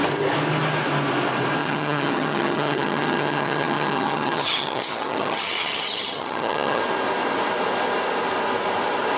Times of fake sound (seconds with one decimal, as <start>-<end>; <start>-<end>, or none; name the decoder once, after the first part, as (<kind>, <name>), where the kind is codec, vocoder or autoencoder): 1.6-6.8 (vocoder, HiFi-GAN)

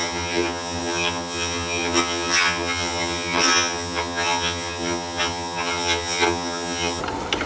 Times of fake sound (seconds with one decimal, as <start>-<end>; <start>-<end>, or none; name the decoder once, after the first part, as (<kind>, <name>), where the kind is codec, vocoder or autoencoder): 0.0-7.0 (vocoder, HiFi-GAN)